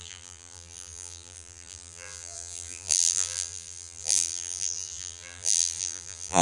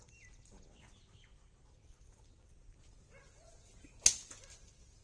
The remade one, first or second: first